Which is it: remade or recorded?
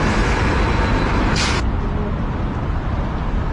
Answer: recorded